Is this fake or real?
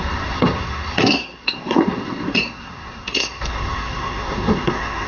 fake